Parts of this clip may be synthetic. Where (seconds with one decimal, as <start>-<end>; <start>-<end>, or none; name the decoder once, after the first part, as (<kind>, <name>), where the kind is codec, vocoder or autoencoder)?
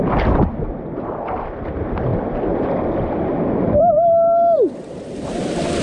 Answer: none